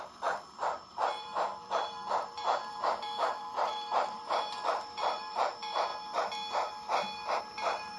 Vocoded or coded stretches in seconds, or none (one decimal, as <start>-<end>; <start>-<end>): 0.0-5.9; 7.4-8.0